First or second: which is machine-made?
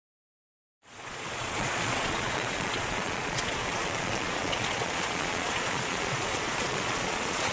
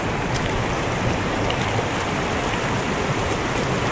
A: first